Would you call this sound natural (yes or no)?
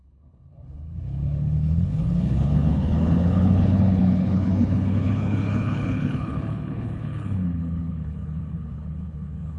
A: no